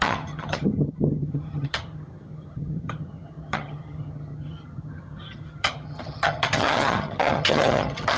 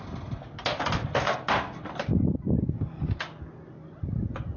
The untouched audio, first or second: second